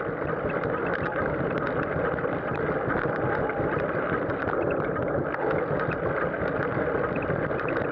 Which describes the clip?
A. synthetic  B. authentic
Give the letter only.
A